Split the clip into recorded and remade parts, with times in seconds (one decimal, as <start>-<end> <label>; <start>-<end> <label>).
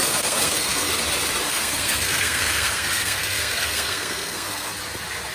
0.0-1.0 remade; 1.0-1.5 recorded; 1.5-4.7 remade; 4.7-5.3 recorded